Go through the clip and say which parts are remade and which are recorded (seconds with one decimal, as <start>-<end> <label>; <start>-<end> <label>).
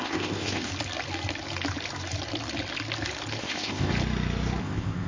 0.0-0.7 remade; 0.7-3.4 recorded; 3.4-3.9 remade; 3.9-4.6 recorded; 4.6-5.1 remade